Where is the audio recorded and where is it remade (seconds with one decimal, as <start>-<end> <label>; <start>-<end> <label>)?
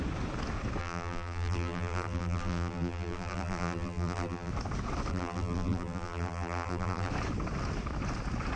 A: 0.0-0.8 recorded; 0.8-4.5 remade; 4.5-5.1 recorded; 5.1-7.1 remade; 7.1-8.6 recorded